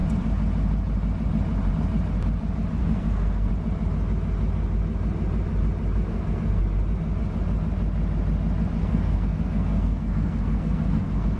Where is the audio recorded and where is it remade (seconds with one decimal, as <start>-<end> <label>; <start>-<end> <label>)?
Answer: 0.0-2.8 recorded; 2.8-3.5 remade; 3.5-6.1 recorded; 6.1-6.6 remade; 6.6-8.8 recorded; 8.8-11.4 remade

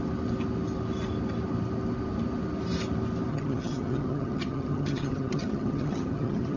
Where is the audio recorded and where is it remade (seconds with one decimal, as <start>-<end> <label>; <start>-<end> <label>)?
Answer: 0.0-3.3 recorded; 3.3-6.6 remade

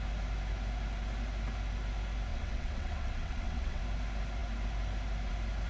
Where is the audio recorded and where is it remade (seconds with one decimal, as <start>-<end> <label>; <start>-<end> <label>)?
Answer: 0.0-2.3 recorded; 2.3-3.8 remade; 3.8-5.7 recorded

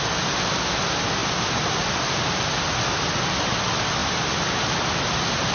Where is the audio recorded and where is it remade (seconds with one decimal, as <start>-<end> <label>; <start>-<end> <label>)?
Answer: 0.0-5.5 recorded

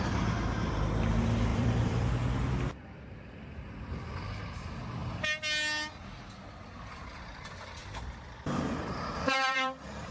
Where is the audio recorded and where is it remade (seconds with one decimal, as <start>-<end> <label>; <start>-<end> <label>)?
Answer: 0.0-1.5 recorded; 1.5-2.1 remade; 2.1-7.8 recorded; 7.8-10.1 remade